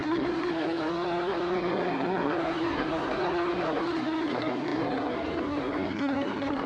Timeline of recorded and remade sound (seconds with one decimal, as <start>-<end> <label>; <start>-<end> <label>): 0.0-6.7 remade